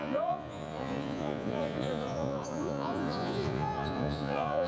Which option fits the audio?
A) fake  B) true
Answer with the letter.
A